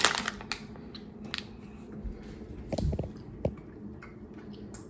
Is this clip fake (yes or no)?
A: no